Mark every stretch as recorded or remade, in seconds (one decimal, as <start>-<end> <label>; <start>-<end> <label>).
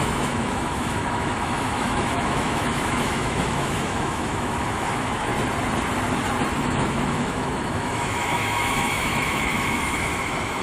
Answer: 0.0-5.3 remade; 5.3-6.6 recorded; 6.6-10.6 remade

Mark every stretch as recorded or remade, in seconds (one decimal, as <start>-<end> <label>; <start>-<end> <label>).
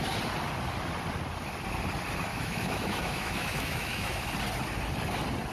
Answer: 0.0-2.3 recorded; 2.3-4.3 remade; 4.3-5.5 recorded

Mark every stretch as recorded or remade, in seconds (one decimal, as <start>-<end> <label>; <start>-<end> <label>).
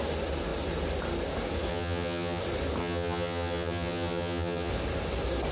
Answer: 0.0-1.7 recorded; 1.7-2.4 remade; 2.4-2.8 recorded; 2.8-4.7 remade; 4.7-5.5 recorded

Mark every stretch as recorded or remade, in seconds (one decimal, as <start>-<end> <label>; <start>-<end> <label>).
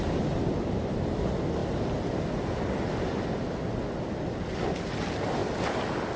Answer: 0.0-6.2 recorded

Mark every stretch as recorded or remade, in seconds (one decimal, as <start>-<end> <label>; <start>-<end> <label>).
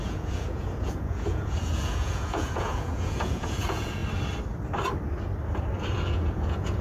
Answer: 0.0-4.0 remade; 4.0-5.8 recorded; 5.8-6.8 remade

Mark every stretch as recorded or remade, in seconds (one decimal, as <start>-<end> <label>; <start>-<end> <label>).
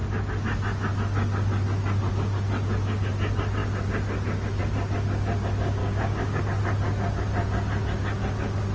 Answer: 0.0-5.8 recorded; 5.8-6.4 remade; 6.4-8.7 recorded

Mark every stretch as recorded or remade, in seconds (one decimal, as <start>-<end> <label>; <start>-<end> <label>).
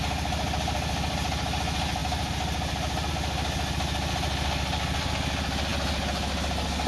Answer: 0.0-6.9 recorded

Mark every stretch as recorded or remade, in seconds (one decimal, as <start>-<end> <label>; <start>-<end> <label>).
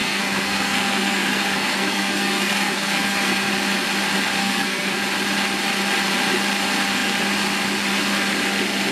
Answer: 0.0-3.5 remade; 3.5-4.4 recorded; 4.4-5.0 remade; 5.0-8.9 recorded